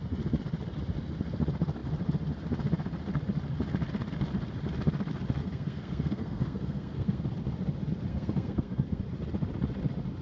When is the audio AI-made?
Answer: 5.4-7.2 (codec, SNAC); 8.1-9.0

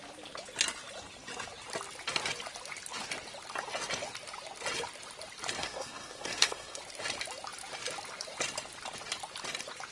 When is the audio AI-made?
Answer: 5.6-6.8 (codec, SNAC)

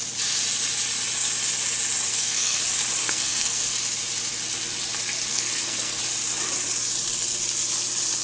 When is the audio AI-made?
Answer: 2.1-2.6 (codec, SNAC); 3.0-3.6; 5.3-6.0

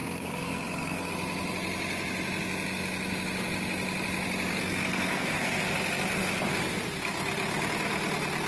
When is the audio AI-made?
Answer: 0.0-1.1 (codec, SNAC); 4.5-5.6